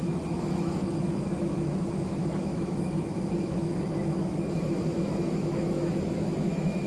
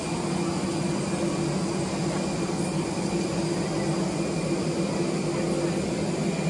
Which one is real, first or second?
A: second